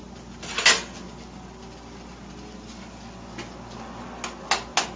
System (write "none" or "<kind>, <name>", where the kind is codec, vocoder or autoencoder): none